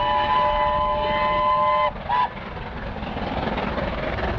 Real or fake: real